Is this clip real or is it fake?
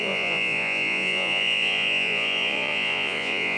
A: fake